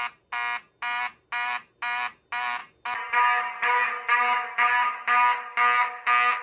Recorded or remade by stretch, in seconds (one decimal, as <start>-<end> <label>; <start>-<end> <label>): 0.0-6.4 recorded

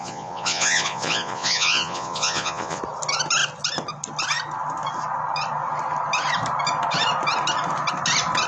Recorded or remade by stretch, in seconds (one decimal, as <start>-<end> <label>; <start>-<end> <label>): 0.0-2.8 remade; 2.8-8.5 recorded

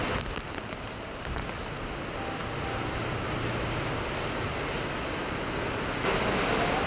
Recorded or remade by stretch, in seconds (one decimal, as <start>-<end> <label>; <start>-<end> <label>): 0.0-6.9 recorded

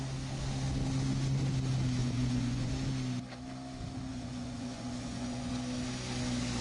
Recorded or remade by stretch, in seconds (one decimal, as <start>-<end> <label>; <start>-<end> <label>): 0.0-2.0 recorded; 2.0-2.7 remade; 2.7-4.1 recorded; 4.1-5.5 remade; 5.5-6.6 recorded

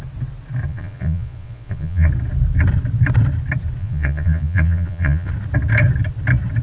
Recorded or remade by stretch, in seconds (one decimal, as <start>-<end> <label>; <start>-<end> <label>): 0.0-0.7 recorded; 0.7-2.1 remade; 2.1-3.8 recorded; 3.8-5.3 remade; 5.3-6.6 recorded

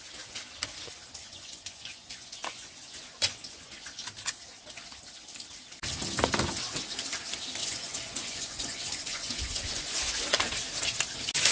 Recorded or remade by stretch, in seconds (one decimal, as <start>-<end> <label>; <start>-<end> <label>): 0.0-1.2 recorded; 1.2-3.9 remade; 3.9-7.6 recorded; 7.6-10.1 remade; 10.1-11.5 recorded

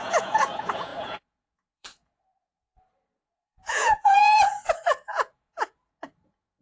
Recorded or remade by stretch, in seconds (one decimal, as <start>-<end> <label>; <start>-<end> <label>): 0.0-6.6 remade